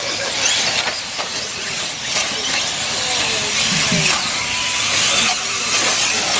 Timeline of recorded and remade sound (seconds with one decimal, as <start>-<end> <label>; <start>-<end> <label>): 0.0-1.3 recorded; 1.3-1.9 remade; 1.9-6.4 recorded